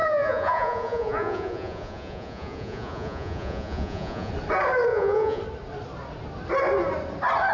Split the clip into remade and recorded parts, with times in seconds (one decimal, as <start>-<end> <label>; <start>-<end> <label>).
0.0-4.3 remade; 4.3-4.9 recorded; 4.9-5.4 remade; 5.4-7.5 recorded